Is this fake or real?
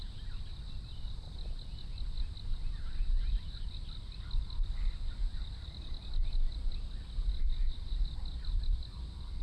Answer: real